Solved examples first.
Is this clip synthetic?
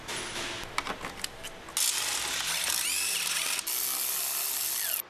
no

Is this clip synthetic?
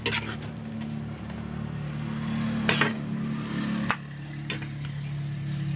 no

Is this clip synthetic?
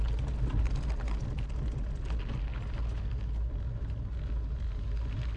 no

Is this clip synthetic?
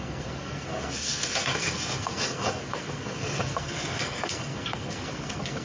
yes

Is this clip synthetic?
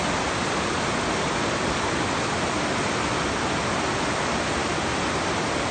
no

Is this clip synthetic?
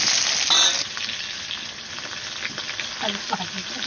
no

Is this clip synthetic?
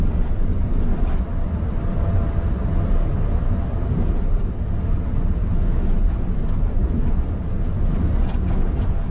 no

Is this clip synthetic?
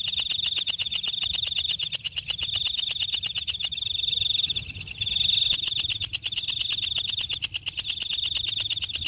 no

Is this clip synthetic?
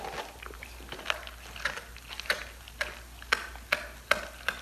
no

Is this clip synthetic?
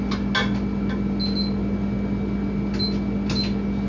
no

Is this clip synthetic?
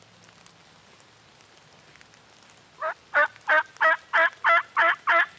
no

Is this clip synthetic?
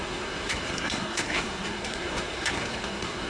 yes